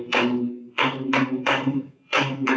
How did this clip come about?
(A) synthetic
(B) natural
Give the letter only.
A